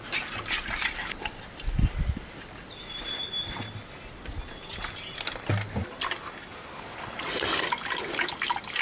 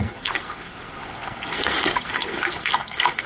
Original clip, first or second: first